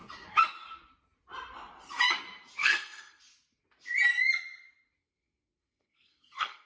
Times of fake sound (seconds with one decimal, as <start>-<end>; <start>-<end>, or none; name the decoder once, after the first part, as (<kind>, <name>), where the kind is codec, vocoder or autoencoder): 2.6-3.2 (codec, SNAC); 5.0-6.7